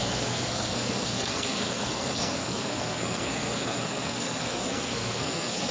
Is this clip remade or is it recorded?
remade